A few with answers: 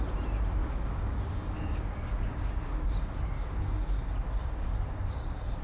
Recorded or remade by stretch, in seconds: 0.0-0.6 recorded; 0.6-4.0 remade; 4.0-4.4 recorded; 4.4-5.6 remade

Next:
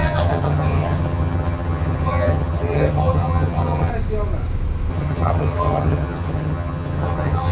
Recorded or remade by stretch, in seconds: 0.0-3.9 remade; 3.9-4.9 recorded; 4.9-7.5 remade

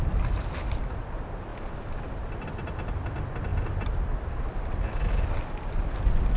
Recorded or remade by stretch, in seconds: 0.0-6.4 recorded

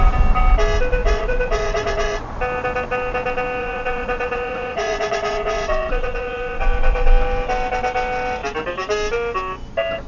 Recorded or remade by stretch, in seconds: 0.0-1.0 recorded; 1.0-2.3 remade; 2.3-3.6 recorded; 3.6-7.1 remade; 7.1-10.1 recorded